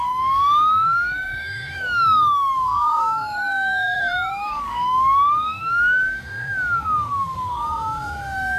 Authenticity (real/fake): fake